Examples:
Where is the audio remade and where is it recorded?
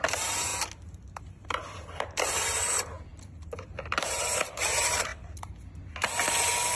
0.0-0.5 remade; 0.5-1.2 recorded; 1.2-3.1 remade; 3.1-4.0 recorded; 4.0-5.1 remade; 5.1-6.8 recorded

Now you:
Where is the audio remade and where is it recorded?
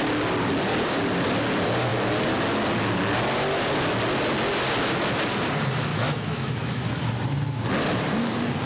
0.0-5.9 recorded; 5.9-7.1 remade; 7.1-8.7 recorded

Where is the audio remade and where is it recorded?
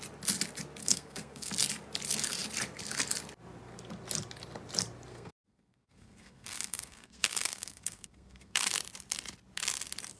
0.0-0.8 recorded; 0.8-1.5 remade; 1.5-5.1 recorded; 5.1-8.7 remade; 8.7-10.2 recorded